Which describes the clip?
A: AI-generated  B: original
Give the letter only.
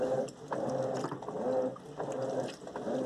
B